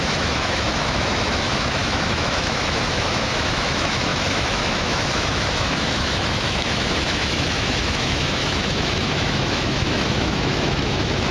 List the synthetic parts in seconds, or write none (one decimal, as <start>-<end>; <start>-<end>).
0.0-11.3